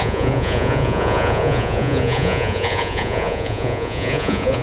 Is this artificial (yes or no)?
yes